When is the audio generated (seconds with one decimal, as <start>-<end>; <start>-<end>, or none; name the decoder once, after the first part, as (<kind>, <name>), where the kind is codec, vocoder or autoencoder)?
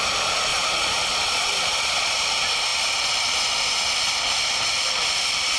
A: 0.5-2.1 (vocoder, Vocos)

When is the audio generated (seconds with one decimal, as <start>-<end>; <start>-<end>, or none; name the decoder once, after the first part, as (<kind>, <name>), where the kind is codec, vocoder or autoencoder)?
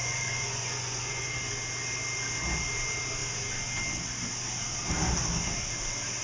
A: 0.0-1.3 (vocoder, Vocos)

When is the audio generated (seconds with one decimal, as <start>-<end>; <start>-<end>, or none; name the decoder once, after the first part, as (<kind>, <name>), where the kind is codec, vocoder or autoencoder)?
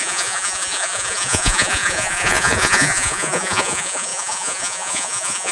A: 0.0-5.5 (vocoder, Vocos)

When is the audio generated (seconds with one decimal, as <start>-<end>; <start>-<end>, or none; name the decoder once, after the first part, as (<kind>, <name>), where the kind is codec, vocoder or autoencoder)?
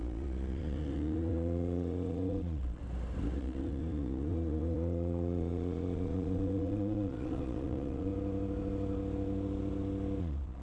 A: 0.0-2.8 (vocoder, Vocos); 3.4-8.1; 10.2-10.6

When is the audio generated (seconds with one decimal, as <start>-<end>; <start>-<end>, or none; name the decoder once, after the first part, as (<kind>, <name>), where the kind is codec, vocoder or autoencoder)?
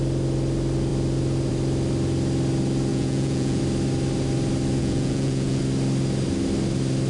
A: 2.9-3.6 (vocoder, Vocos); 4.8-5.6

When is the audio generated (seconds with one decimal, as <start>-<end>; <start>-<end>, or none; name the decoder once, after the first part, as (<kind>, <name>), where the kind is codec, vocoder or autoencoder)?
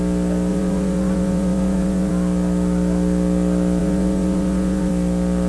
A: 0.5-2.1 (vocoder, Vocos); 3.8-4.9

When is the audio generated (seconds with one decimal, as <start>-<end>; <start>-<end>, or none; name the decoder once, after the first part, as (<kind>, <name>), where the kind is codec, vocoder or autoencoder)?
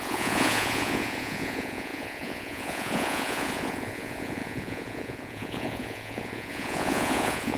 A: 0.0-7.6 (vocoder, Vocos)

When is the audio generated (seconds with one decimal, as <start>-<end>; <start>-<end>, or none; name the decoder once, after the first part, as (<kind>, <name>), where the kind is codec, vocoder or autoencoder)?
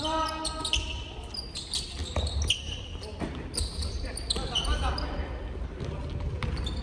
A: none